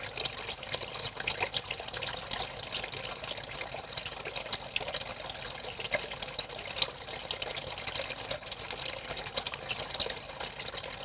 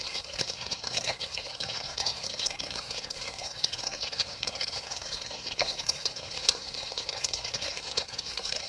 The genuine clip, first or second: first